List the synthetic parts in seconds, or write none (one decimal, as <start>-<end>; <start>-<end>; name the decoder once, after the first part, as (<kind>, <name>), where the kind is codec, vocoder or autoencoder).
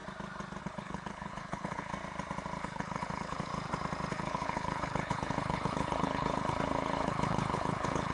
0.6-1.9 (codec, HILCodec); 2.6-3.5; 4.1-8.1